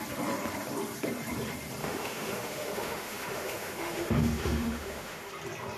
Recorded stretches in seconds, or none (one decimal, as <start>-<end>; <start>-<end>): 0.0-1.8; 5.3-5.8